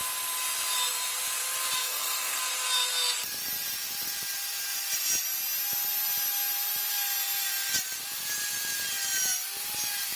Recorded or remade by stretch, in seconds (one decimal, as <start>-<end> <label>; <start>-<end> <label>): 0.0-1.8 recorded; 1.8-2.4 remade; 2.4-10.2 recorded